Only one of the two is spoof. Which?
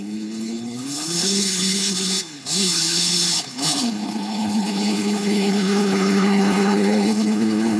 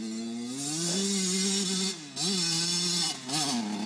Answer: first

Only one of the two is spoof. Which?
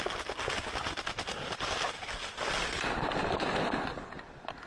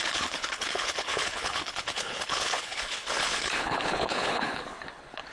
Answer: second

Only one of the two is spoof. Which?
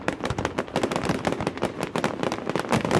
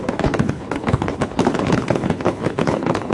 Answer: second